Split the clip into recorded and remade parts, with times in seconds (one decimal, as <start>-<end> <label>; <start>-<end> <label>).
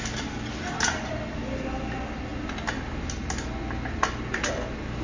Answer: 0.0-5.0 recorded